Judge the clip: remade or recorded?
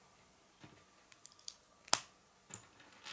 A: recorded